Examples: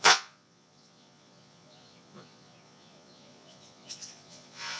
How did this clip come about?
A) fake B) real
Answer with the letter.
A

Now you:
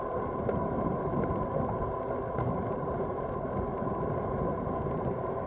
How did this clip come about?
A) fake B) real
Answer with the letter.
B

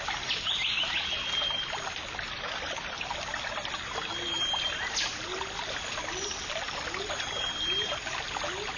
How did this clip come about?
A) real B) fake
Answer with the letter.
A